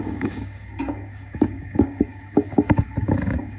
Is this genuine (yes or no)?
no